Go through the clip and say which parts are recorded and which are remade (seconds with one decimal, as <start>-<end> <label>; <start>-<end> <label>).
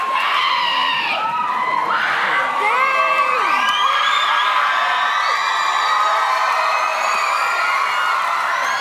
0.0-1.8 recorded; 1.8-5.0 remade; 5.0-5.4 recorded; 5.4-6.2 remade; 6.2-6.9 recorded; 6.9-7.7 remade; 7.7-8.8 recorded